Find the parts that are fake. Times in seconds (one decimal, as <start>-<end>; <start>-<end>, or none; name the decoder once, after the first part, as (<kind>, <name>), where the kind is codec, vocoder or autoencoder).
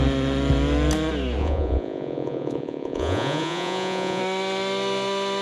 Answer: 1.4-4.2 (vocoder, Vocos)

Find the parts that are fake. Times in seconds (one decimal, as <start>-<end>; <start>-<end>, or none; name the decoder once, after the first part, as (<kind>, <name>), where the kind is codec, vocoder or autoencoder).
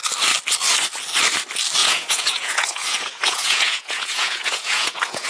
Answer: 1.8-5.3 (vocoder, Vocos)